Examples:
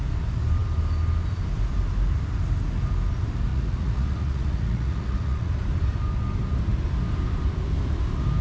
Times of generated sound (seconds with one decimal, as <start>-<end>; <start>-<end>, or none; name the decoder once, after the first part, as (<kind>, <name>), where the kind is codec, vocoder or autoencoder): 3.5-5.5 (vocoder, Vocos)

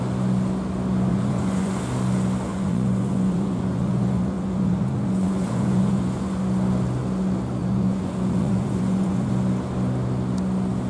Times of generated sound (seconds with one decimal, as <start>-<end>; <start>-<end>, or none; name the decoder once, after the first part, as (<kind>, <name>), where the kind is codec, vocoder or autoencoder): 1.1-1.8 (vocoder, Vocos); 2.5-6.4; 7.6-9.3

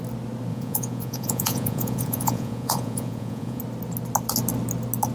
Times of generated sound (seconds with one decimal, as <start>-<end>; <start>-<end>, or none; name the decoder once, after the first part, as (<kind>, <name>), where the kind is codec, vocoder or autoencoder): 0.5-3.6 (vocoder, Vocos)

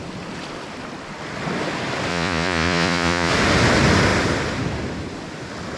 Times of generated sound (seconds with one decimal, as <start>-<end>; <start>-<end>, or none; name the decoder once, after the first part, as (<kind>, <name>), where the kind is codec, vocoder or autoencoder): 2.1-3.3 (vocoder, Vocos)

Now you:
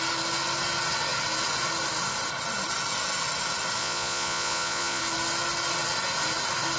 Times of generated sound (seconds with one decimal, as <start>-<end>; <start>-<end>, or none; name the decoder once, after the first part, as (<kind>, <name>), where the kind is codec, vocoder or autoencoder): 3.8-5.0 (vocoder, Vocos)

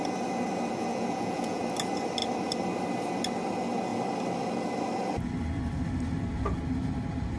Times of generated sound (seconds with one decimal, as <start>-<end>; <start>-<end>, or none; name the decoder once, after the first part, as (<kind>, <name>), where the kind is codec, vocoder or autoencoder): 0.9-1.6 (vocoder, Vocos)